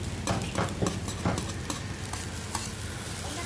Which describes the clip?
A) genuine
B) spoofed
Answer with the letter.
A